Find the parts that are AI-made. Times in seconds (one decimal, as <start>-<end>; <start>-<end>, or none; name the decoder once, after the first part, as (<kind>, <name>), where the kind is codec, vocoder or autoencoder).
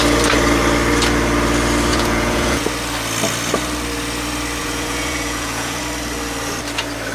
1.9-2.7 (vocoder, Vocos); 4.6-5.8